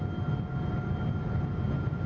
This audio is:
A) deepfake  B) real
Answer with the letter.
B